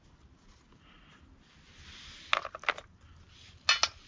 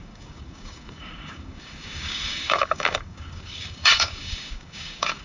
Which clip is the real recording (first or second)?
first